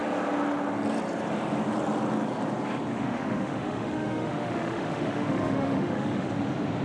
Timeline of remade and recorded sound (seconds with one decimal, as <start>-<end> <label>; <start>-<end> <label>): 0.0-2.9 recorded; 2.9-6.3 remade; 6.3-6.8 recorded